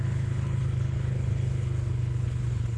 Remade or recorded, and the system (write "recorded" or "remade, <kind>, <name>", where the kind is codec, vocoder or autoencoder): remade, codec, HILCodec